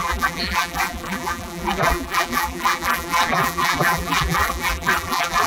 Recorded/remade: remade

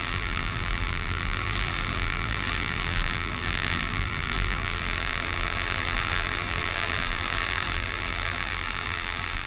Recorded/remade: remade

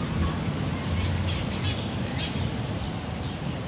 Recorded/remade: remade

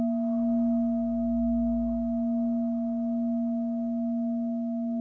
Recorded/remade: recorded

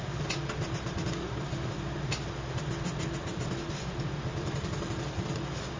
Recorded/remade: remade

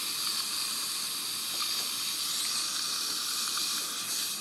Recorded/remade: recorded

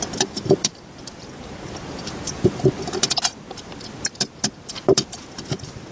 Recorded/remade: remade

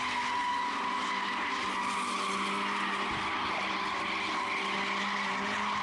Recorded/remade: recorded